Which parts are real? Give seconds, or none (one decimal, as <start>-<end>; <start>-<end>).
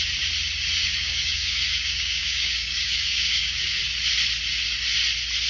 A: 0.0-0.8; 3.8-5.5